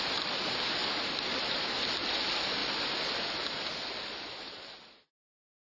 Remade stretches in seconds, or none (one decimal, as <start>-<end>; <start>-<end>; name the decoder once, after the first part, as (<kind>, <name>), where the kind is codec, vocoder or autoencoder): none